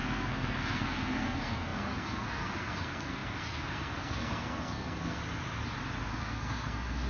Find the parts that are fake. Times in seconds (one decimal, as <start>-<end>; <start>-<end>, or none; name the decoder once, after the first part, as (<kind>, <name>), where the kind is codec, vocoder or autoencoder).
0.0-5.2 (codec, SNAC); 6.1-7.1